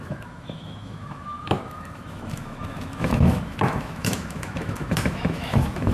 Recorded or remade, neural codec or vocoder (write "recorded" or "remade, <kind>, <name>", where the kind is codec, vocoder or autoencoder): remade, autoencoder, DAC-VAE